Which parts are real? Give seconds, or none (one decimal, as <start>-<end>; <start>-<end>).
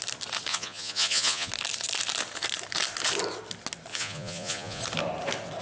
0.0-0.5; 1.5-3.9; 4.8-5.6